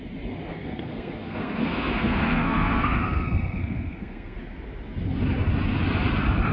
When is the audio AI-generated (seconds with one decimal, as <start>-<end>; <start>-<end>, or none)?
0.5-4.4